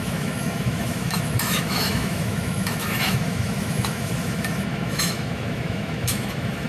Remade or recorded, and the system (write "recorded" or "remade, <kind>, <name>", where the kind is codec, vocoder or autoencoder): remade, autoencoder, DAC-VAE